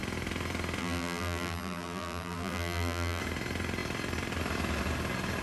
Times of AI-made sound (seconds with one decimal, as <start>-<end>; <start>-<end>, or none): 0.8-3.2